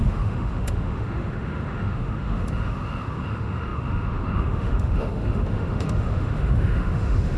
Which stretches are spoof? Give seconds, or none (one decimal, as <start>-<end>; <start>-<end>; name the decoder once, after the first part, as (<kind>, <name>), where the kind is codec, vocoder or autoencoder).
0.0-7.4 (autoencoder, DAC-VAE)